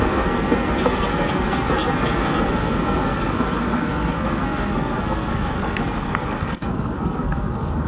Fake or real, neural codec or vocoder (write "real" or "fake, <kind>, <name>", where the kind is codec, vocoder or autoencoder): fake, codec, SNAC